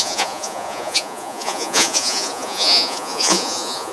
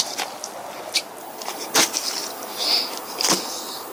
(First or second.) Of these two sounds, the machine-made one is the first